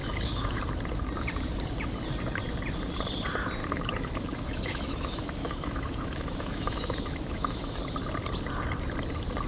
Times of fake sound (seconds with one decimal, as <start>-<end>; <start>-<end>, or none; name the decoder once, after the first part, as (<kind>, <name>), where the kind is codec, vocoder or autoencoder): 0.0-0.6 (autoencoder, DAC-VAE); 3.6-7.8